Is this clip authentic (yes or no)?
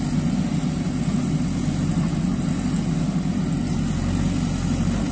yes